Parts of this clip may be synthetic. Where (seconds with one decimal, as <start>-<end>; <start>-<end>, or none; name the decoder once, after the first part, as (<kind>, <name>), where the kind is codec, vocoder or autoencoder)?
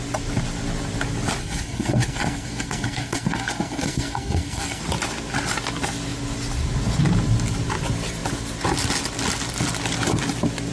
1.4-4.8 (codec, SNAC)